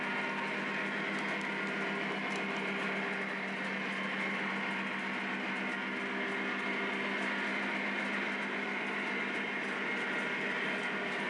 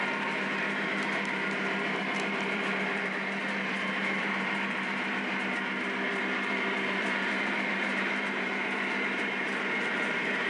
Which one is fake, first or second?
second